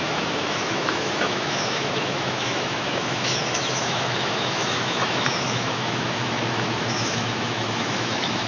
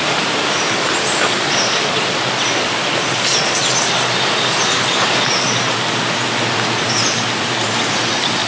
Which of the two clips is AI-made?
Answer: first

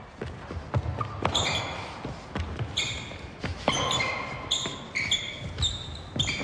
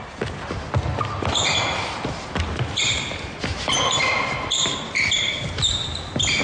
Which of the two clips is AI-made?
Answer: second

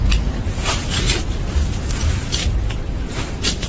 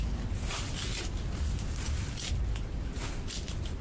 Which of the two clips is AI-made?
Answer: first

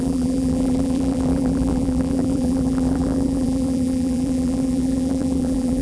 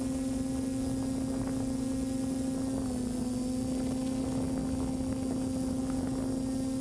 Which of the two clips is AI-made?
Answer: first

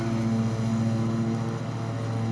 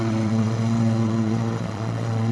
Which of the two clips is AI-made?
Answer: second